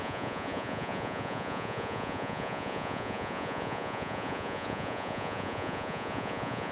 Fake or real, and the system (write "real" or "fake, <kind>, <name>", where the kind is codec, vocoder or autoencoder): fake, vocoder, Vocos